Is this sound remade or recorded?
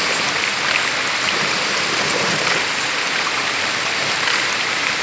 recorded